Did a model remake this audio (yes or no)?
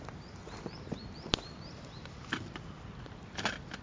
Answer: yes